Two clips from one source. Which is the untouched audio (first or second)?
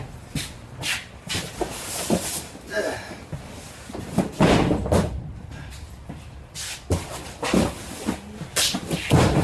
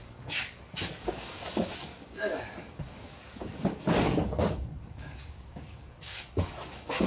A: first